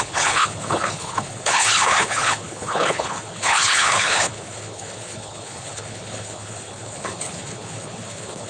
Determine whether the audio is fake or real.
fake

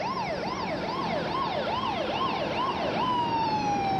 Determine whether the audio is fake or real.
real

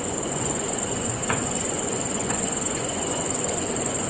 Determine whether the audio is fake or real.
fake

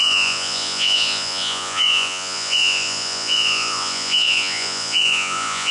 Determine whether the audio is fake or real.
fake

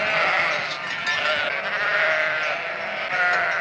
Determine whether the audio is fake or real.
real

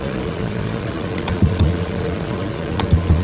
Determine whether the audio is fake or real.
fake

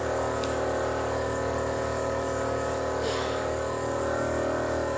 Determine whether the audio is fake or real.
fake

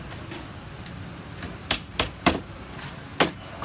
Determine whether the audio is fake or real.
fake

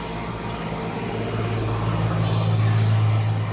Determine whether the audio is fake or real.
real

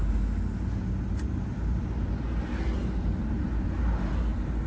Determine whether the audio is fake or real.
real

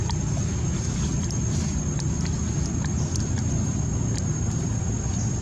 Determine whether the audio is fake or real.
real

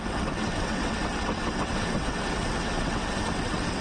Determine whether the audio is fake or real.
fake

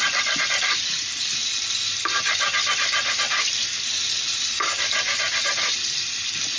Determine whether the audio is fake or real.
real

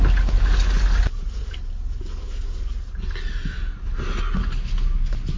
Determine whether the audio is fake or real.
real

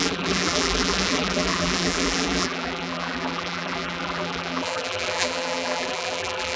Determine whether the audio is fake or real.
fake